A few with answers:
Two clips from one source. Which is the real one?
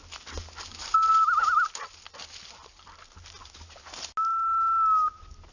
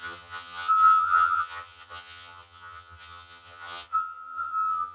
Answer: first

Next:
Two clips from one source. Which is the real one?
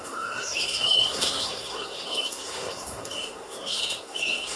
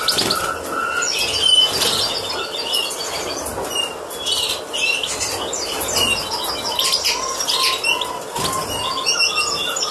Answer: second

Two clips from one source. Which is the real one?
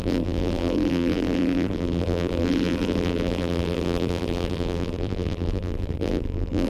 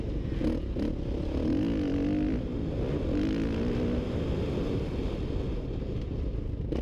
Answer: second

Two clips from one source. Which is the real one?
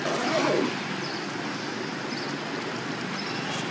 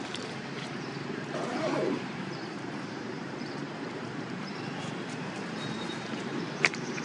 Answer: first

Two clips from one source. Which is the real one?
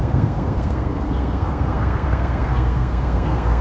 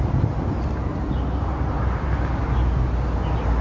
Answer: second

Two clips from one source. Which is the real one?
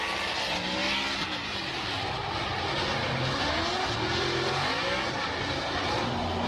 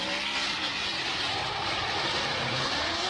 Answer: first